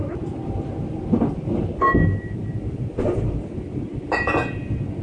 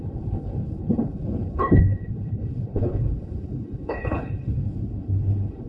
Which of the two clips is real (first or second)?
first